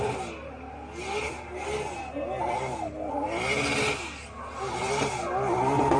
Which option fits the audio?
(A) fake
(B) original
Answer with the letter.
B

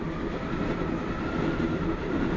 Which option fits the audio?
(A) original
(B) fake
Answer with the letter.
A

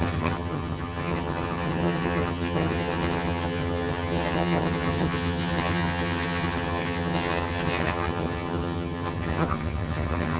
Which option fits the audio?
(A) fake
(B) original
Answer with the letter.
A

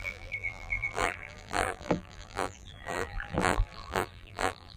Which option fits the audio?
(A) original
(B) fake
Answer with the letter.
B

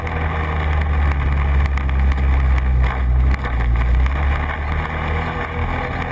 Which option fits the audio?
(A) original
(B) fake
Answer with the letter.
A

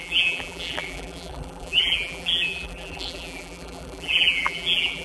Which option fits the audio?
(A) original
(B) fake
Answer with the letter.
B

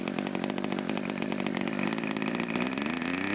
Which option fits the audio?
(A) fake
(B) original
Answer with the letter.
B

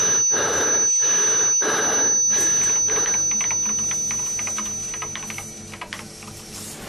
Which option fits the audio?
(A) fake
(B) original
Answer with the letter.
B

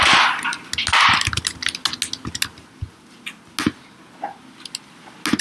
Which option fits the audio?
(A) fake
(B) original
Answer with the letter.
B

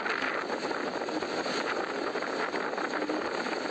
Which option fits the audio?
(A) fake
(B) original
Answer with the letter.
B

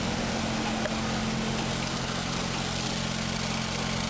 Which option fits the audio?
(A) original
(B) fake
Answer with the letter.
A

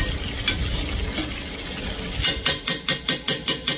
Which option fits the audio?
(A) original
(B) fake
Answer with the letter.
A